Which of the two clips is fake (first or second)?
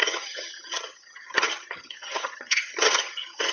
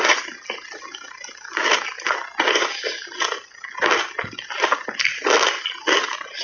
first